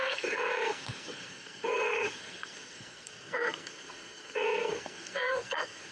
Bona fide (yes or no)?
no